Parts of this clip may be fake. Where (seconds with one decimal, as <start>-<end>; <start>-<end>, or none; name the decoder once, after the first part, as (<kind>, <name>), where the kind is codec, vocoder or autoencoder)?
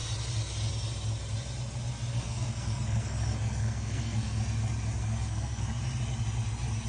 2.1-4.4 (codec, SNAC); 5.0-5.8